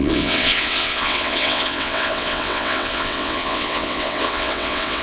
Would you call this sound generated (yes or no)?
yes